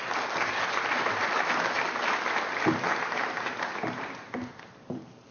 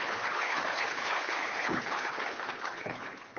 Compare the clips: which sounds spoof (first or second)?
second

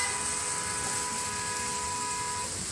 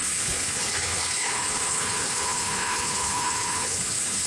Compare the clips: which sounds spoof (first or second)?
second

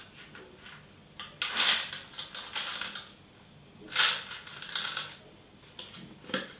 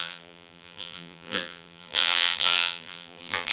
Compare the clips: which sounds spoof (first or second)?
second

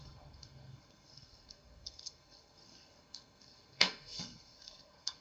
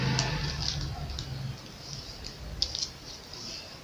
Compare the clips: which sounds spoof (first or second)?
first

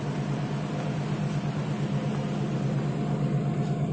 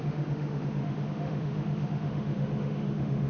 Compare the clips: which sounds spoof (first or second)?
second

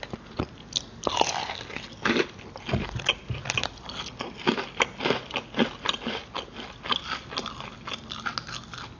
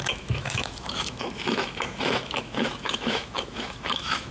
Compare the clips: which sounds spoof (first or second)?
second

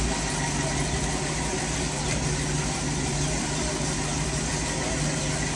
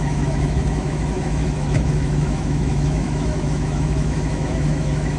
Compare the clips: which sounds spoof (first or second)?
second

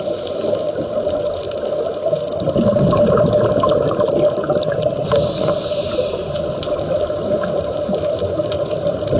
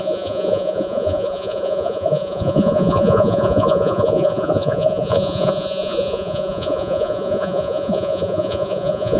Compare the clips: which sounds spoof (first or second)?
second